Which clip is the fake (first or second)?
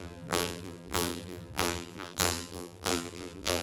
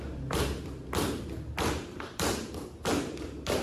first